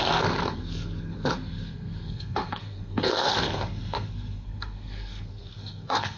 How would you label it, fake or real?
fake